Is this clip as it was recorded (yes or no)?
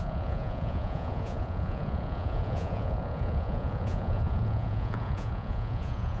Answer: no